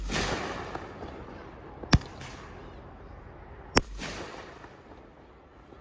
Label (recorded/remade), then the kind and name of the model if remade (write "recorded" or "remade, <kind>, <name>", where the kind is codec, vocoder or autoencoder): remade, vocoder, BigVGAN v2